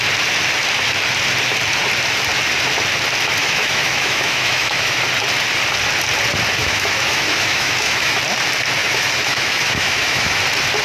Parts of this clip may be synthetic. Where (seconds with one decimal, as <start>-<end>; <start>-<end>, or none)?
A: 3.4-5.0; 6.6-8.2; 8.8-10.4